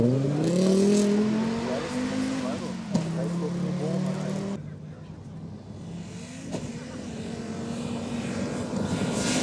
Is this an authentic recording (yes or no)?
yes